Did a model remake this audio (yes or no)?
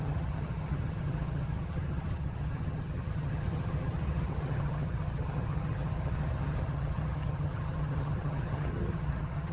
yes